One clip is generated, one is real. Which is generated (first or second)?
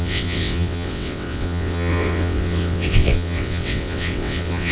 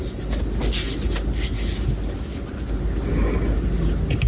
first